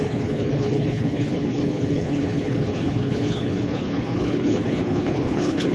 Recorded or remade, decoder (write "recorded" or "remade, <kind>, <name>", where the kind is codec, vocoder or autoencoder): remade, codec, HILCodec